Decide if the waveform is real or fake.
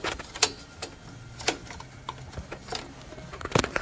real